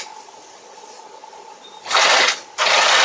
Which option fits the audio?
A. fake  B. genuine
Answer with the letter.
B